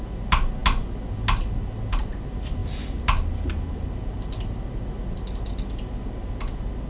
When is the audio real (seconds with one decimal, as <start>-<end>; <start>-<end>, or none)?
0.0-6.9